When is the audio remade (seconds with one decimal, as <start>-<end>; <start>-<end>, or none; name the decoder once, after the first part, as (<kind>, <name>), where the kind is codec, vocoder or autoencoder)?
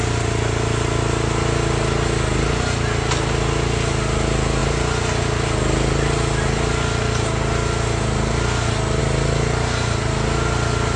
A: none